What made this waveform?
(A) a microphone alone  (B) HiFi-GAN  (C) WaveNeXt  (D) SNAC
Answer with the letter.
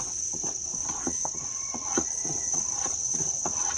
C